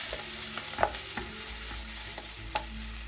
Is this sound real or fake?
real